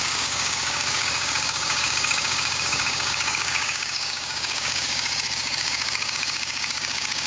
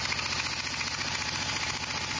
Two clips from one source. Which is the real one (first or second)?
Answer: second